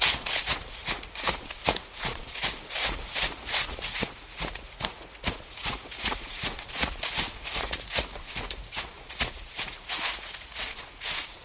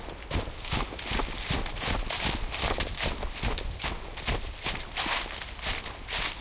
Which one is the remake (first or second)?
first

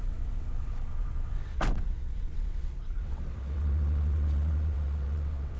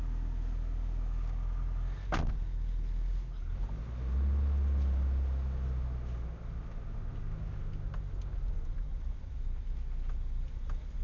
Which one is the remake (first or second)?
first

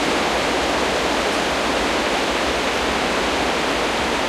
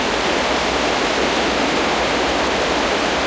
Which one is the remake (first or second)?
second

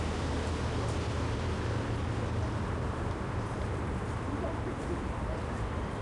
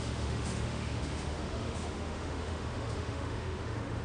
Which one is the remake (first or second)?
second